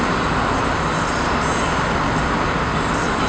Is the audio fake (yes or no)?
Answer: no